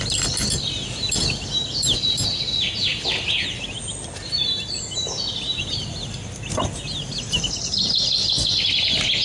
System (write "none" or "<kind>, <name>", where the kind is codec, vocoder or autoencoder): none